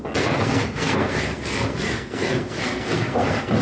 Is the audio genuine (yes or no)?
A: no